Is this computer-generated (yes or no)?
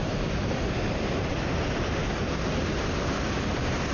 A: yes